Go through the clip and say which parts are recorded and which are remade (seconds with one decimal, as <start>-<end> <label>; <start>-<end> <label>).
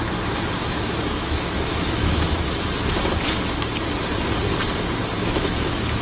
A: 0.0-0.6 recorded; 0.6-3.1 remade; 3.1-5.2 recorded; 5.2-6.0 remade